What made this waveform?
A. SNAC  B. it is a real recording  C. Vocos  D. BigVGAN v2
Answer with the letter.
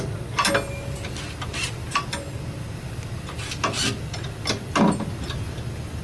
B